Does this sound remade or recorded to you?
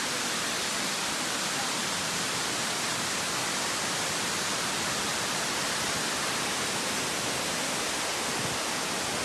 recorded